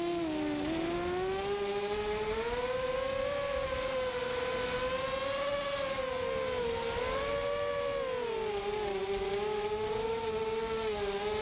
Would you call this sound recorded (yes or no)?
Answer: yes